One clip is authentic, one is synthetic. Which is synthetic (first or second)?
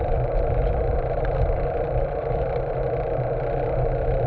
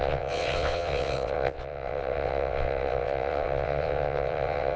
second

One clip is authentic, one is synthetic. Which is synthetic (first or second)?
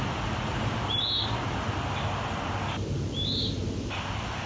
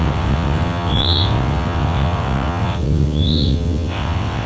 second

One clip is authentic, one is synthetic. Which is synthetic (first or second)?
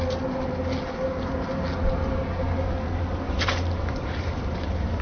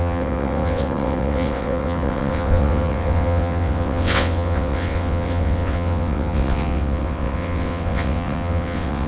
second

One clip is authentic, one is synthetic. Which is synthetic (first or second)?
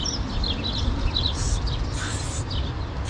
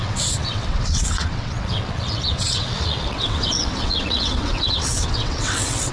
second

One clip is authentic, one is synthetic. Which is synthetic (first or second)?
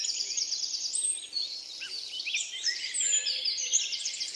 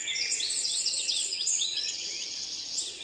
second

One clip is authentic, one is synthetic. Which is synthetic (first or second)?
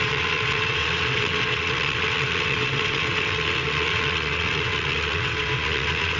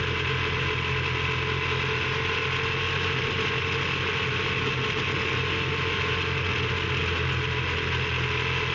first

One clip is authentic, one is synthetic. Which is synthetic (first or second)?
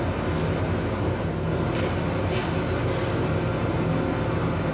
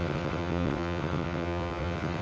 second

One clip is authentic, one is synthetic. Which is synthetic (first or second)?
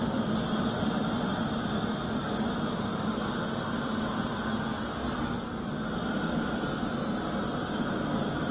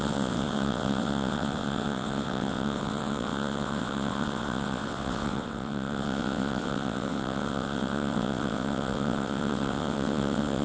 second